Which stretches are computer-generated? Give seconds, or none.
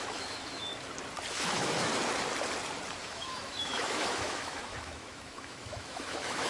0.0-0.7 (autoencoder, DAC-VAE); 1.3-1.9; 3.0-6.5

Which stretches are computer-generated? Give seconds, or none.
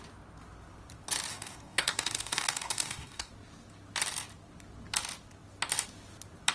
1.3-3.3 (codec, DAC)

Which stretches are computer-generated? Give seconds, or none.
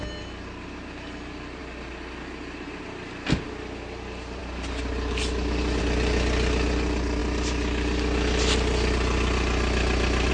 none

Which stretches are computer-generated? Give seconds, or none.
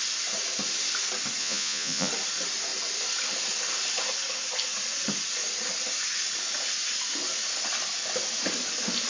1.4-2.1 (vocoder, Vocos)